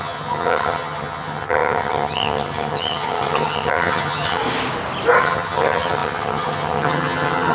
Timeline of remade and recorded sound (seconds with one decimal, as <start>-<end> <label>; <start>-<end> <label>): 0.0-4.4 remade; 4.4-5.2 recorded; 5.2-7.5 remade